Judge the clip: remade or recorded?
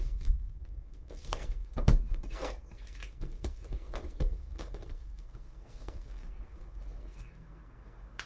remade